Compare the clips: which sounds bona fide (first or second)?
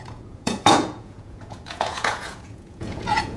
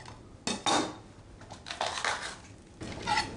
second